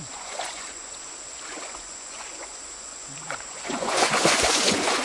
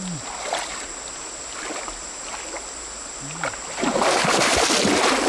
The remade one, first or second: first